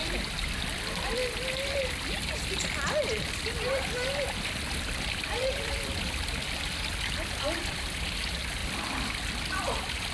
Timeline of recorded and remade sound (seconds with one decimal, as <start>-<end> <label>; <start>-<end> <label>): 0.0-5.4 recorded; 5.4-7.7 remade; 7.7-8.6 recorded; 8.6-9.3 remade; 9.3-10.1 recorded